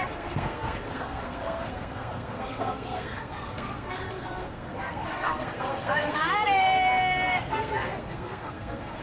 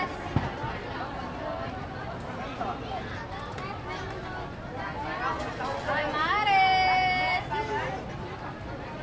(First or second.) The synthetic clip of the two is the first